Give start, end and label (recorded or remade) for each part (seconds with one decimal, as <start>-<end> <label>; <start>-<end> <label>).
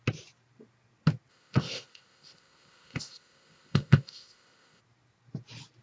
0.0-1.3 recorded; 1.3-4.8 remade; 4.8-5.8 recorded